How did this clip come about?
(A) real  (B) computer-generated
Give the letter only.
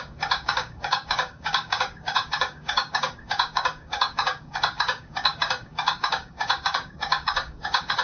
B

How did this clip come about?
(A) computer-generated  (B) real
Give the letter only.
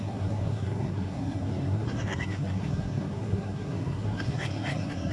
A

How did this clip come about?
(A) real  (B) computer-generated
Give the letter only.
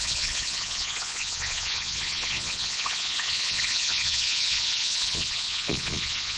B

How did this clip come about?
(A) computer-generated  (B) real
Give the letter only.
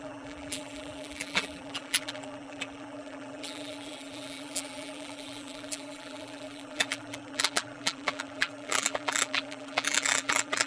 A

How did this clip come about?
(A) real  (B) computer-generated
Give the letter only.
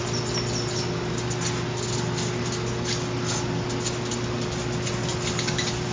A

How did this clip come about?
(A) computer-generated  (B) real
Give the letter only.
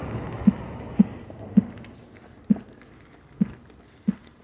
A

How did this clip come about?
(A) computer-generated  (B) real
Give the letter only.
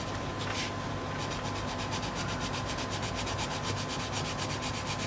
B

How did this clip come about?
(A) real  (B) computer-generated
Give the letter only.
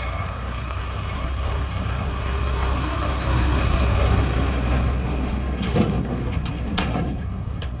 B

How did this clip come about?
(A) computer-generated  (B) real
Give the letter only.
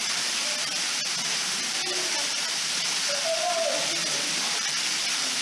B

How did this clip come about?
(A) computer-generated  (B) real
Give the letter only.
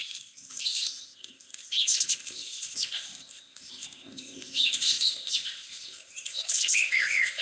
A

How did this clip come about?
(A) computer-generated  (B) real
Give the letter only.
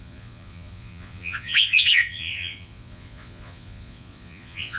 A